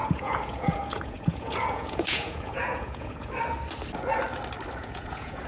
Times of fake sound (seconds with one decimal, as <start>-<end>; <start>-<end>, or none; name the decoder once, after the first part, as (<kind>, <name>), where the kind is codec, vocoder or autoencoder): 0.0-3.3 (vocoder, Vocos); 4.8-5.5

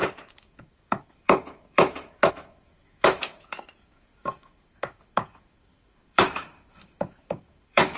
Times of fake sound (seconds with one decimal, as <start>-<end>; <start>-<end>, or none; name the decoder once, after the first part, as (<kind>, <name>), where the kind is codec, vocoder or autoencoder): 0.0-8.0 (autoencoder, DAC-VAE)

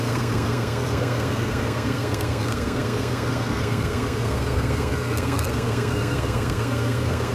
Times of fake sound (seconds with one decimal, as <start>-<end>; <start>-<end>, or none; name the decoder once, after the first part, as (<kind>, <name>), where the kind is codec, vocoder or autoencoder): 0.0-7.3 (codec, SNAC)